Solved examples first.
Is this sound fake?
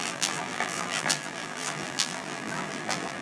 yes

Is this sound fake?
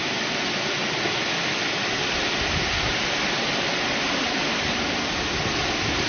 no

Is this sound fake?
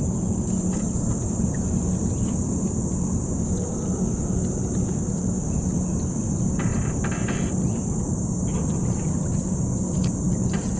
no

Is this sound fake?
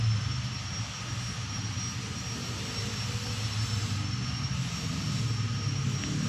no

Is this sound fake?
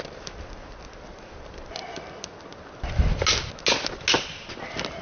no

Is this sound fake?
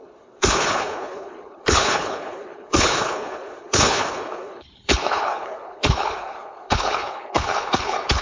yes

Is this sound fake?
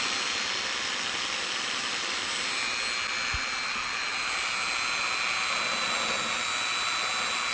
no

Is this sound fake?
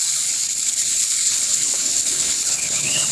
yes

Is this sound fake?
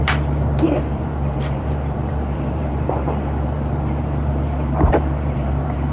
yes